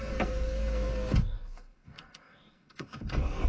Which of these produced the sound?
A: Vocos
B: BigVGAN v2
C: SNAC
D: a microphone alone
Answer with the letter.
C